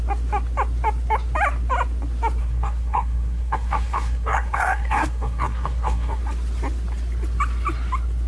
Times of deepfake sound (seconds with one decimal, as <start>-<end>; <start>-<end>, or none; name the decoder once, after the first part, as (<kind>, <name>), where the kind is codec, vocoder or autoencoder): 2.4-6.2 (codec, SNAC)